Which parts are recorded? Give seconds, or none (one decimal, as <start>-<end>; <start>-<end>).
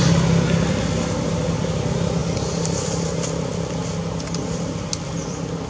0.0-5.7